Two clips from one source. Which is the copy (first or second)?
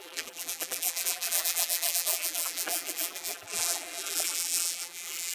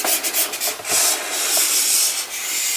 first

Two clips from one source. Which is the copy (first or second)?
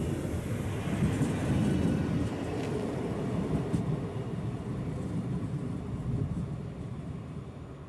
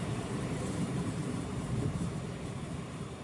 second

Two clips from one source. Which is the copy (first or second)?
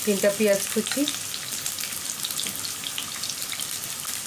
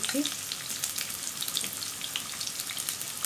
first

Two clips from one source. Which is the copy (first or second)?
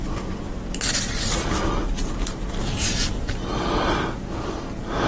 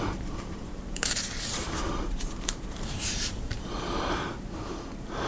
second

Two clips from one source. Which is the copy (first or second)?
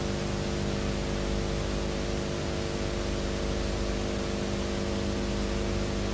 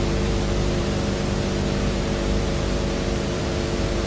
second